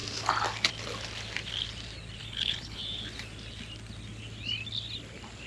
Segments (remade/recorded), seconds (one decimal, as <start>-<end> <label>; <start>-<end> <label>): 0.0-2.2 recorded; 2.2-2.8 remade; 2.8-5.5 recorded